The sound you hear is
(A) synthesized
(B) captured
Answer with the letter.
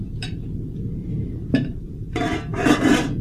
A